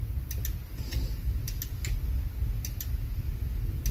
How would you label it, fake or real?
real